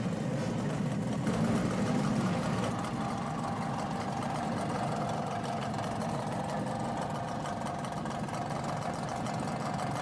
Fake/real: real